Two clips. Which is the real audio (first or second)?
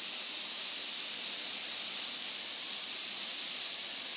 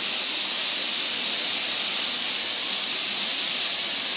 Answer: second